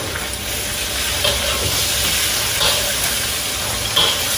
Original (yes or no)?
yes